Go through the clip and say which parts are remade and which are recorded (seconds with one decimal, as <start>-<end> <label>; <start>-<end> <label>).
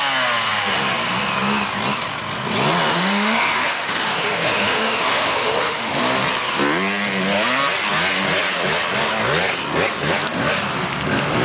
0.0-2.9 recorded; 2.9-6.0 remade; 6.0-11.4 recorded